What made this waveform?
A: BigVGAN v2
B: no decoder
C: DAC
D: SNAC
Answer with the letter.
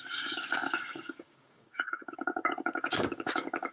C